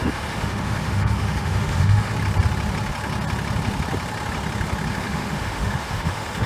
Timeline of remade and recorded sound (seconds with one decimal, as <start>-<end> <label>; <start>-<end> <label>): 0.0-2.1 remade; 2.1-4.9 recorded; 4.9-6.5 remade